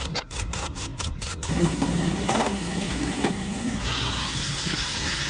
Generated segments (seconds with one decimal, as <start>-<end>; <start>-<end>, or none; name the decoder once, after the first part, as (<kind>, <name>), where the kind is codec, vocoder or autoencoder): 0.0-5.3 (codec, SNAC)